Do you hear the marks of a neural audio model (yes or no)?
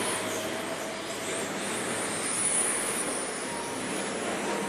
no